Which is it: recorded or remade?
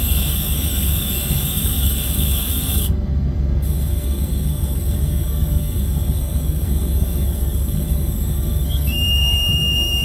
remade